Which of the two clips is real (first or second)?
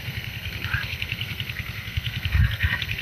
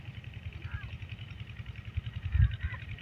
second